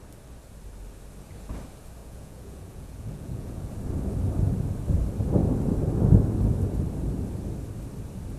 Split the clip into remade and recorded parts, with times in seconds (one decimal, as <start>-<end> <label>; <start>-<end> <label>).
0.0-2.0 recorded; 2.0-3.7 remade; 3.7-8.4 recorded